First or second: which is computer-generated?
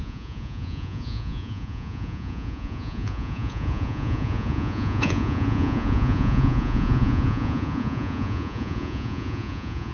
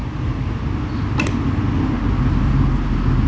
first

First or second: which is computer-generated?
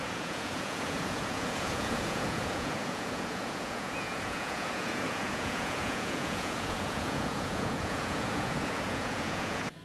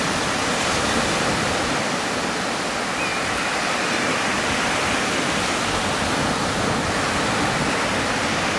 first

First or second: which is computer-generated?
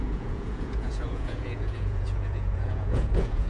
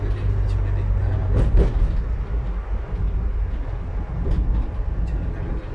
first